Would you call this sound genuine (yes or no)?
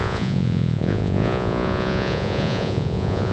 no